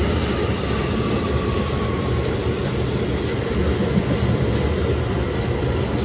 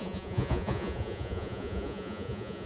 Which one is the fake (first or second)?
second